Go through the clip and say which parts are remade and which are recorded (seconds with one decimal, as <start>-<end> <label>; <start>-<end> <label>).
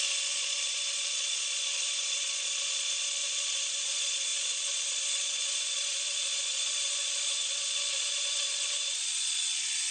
0.0-9.9 remade